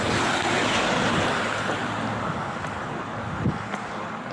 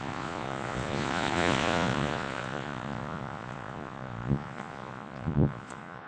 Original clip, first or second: first